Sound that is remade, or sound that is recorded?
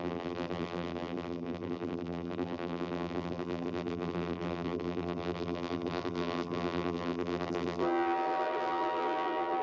remade